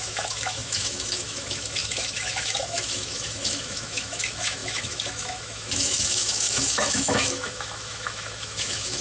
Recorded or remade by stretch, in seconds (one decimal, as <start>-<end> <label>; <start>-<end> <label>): 0.0-9.0 remade